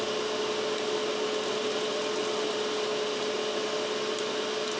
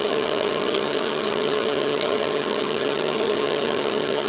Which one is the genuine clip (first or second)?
first